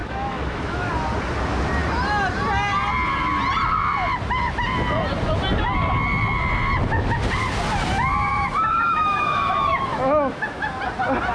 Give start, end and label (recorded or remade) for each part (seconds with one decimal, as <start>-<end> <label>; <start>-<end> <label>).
0.0-0.9 remade; 0.9-8.3 recorded; 8.3-10.7 remade; 10.7-11.3 recorded